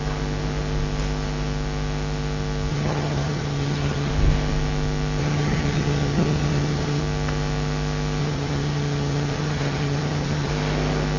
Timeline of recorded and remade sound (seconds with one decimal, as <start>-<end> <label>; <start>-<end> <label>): 0.0-2.7 recorded; 2.7-4.1 remade; 4.1-5.2 recorded; 5.2-7.0 remade; 7.0-8.2 recorded; 8.2-10.5 remade; 10.5-11.2 recorded